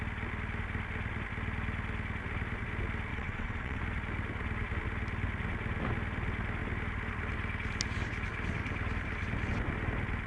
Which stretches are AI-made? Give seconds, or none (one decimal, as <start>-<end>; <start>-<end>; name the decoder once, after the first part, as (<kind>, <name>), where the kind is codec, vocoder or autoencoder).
3.1-3.8 (vocoder, WaveNeXt)